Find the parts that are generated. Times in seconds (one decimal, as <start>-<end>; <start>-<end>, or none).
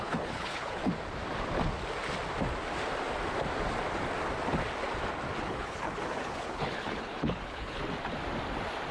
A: 0.0-0.8; 5.4-7.8